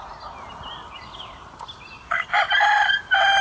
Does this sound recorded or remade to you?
recorded